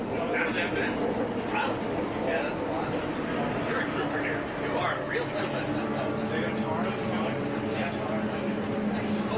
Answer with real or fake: real